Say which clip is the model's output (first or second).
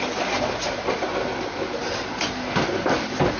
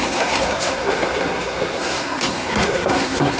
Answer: second